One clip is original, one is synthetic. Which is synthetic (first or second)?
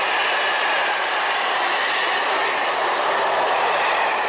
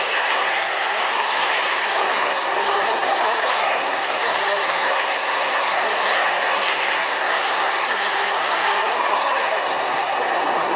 second